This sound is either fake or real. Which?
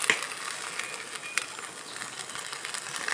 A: real